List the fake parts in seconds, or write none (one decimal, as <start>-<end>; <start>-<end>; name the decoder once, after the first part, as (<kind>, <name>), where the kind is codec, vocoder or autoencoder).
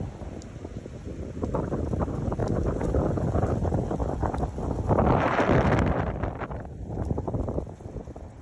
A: none